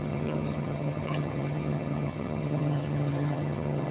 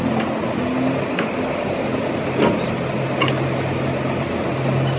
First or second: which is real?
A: second